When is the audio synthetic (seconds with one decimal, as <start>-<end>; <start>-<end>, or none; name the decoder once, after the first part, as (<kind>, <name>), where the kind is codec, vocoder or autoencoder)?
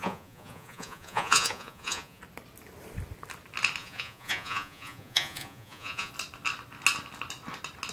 0.0-2.2 (vocoder, Vocos); 3.8-6.1